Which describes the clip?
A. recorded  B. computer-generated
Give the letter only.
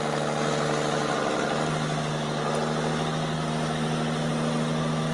A